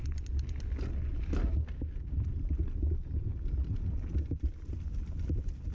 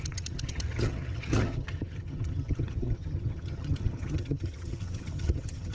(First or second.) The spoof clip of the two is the second